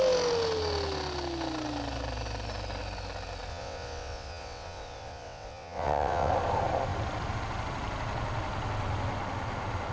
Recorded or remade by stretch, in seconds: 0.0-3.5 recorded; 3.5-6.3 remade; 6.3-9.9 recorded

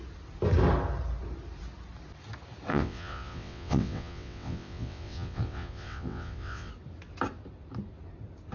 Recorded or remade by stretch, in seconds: 0.0-2.7 recorded; 2.7-6.7 remade; 6.7-8.5 recorded

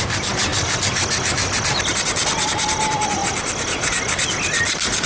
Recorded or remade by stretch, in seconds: 0.0-5.1 recorded

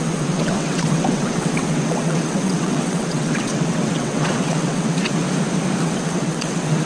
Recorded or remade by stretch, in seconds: 0.0-5.2 remade; 5.2-5.8 recorded; 5.8-6.9 remade